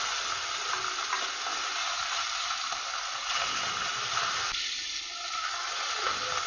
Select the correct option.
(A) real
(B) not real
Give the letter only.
A